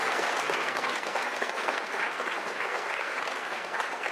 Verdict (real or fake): fake